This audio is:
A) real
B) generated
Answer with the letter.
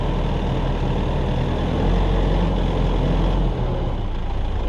A